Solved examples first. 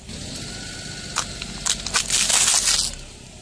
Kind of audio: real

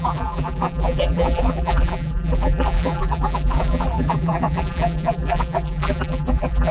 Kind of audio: fake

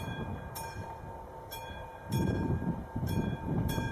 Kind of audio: fake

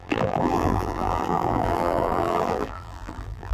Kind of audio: fake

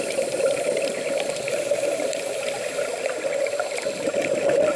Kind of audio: fake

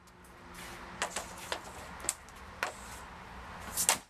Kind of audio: real